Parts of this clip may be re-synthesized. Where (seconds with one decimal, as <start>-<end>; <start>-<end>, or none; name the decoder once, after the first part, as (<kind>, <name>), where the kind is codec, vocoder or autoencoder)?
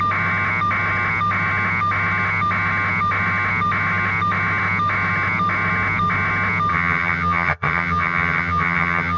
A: 6.7-9.2 (vocoder, HiFi-GAN)